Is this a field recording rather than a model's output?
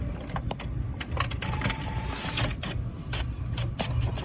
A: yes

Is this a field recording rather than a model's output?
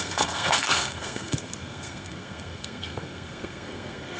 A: no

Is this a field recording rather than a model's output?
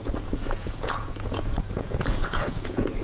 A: no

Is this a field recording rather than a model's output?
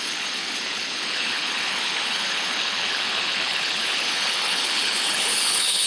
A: no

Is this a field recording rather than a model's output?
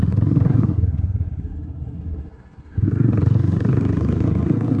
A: no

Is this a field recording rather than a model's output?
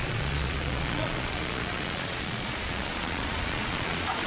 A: no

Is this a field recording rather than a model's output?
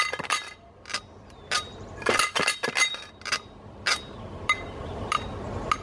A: yes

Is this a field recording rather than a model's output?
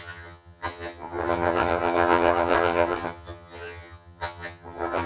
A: no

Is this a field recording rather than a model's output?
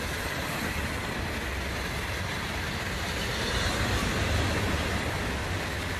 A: yes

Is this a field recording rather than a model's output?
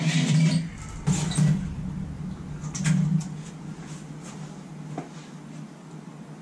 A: yes